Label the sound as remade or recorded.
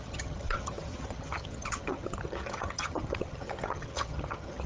remade